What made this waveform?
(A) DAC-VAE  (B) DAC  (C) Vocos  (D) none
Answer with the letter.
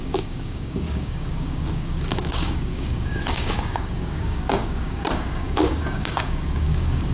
B